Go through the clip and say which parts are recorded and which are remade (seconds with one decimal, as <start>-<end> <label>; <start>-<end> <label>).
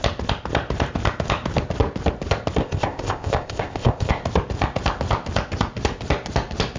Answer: 0.0-2.6 recorded; 2.6-4.2 remade; 4.2-6.8 recorded